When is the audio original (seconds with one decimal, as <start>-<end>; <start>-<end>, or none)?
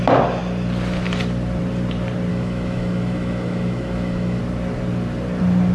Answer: 0.0-2.3; 4.4-5.7